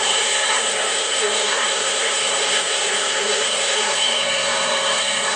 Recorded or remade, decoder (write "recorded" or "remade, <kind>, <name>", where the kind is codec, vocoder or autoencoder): remade, codec, SNAC